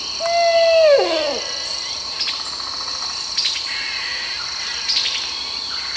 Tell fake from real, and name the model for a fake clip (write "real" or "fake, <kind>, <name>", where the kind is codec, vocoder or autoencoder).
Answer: real